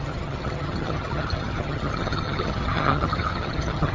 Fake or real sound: fake